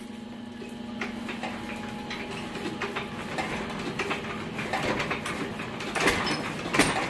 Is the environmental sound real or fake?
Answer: real